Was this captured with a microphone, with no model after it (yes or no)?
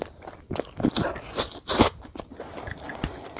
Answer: yes